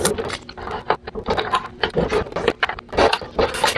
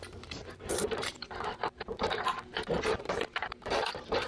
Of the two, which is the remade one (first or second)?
second